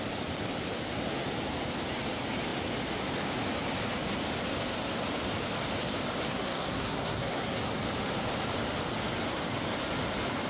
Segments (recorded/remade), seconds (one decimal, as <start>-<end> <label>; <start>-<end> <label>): 0.0-6.3 recorded; 6.3-7.6 remade; 7.6-10.5 recorded